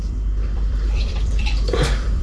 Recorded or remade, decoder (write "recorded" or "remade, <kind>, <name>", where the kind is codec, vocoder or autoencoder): remade, vocoder, BigVGAN v2